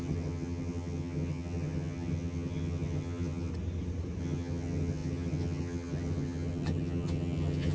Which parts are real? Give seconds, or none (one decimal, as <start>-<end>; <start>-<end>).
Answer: 3.5-4.2